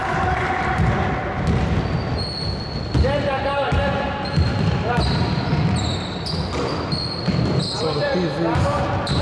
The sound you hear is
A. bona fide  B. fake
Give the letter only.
A